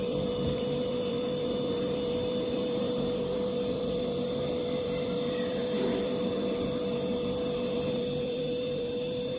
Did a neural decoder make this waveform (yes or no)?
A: yes